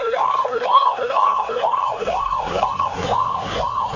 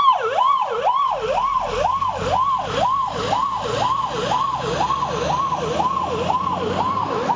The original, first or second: second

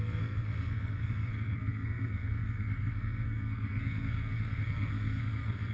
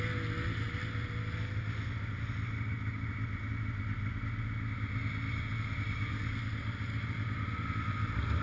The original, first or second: second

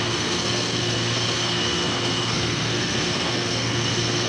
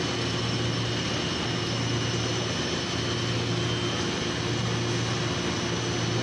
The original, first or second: second